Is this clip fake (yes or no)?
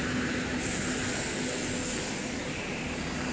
no